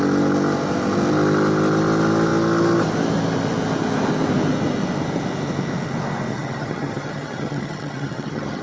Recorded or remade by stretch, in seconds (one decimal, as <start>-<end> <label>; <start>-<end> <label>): 0.0-6.3 recorded; 6.3-8.6 remade